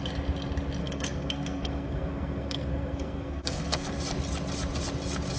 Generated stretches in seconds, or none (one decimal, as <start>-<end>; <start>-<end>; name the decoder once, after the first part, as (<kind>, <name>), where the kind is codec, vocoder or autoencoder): 0.8-4.0 (codec, SNAC)